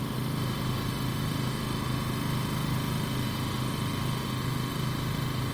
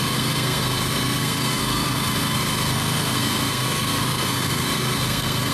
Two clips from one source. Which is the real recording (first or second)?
first